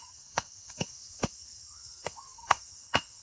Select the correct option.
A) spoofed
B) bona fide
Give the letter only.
A